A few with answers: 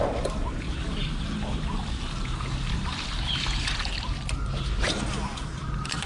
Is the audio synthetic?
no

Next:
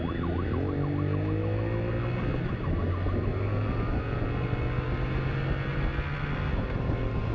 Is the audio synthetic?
no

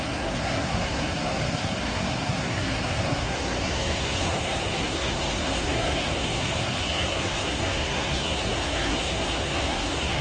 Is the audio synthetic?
yes